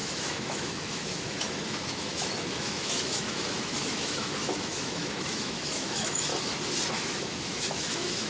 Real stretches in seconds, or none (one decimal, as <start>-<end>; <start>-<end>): 6.3-6.9